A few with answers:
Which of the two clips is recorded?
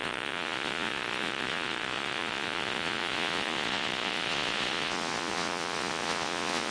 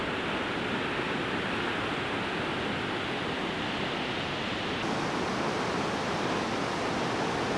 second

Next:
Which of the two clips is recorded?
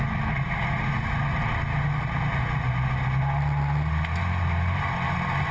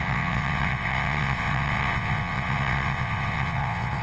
first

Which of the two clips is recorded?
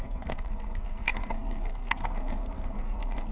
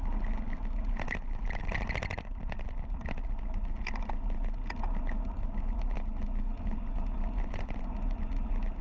second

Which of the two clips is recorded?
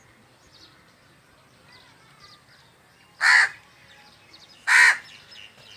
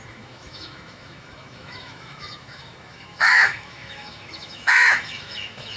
first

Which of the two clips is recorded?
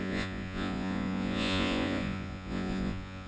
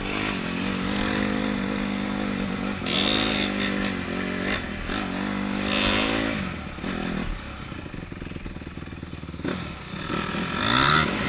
second